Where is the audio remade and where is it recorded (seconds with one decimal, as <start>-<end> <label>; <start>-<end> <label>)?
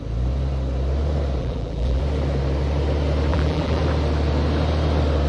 0.0-1.4 recorded; 1.4-2.0 remade; 2.0-3.3 recorded; 3.3-3.8 remade; 3.8-5.3 recorded